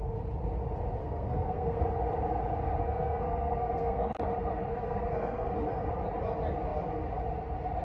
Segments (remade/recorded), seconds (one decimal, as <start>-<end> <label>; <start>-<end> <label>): 0.0-1.0 recorded; 1.0-1.8 remade; 1.8-2.8 recorded; 2.8-4.2 remade; 4.2-4.7 recorded; 4.7-5.5 remade; 5.5-7.8 recorded